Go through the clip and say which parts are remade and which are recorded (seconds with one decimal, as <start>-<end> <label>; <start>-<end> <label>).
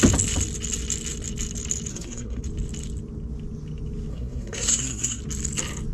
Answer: 0.0-1.9 recorded; 1.9-2.4 remade; 2.4-4.1 recorded; 4.1-5.2 remade; 5.2-5.9 recorded